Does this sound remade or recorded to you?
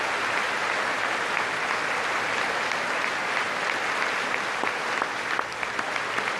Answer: recorded